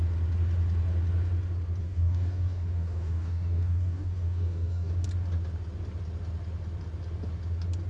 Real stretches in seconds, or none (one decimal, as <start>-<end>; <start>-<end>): 0.0-1.8; 4.9-7.9